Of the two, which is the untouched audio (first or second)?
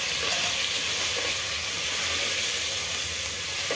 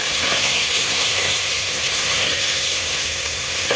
first